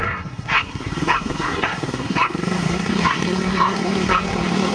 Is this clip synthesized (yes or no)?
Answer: yes